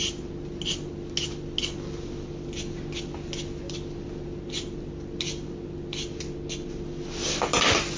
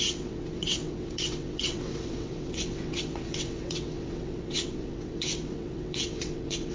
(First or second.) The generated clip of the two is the second